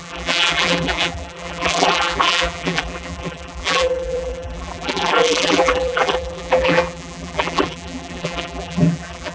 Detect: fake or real fake